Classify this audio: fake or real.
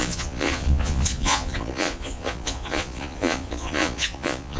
fake